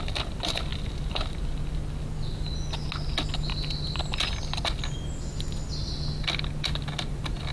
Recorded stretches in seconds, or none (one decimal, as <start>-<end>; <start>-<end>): 0.0-7.5